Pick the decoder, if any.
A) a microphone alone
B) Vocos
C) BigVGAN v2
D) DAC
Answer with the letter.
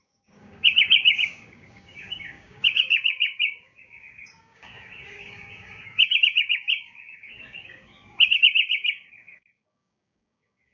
D